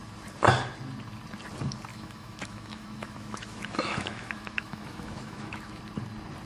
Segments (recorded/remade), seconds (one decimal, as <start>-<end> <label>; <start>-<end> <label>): 0.0-1.9 recorded; 1.9-5.8 remade; 5.8-6.5 recorded